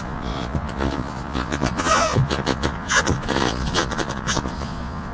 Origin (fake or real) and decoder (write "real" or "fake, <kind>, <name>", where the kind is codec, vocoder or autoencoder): fake, vocoder, Vocos